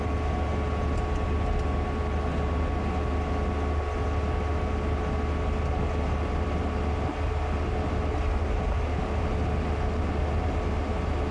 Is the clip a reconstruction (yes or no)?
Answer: no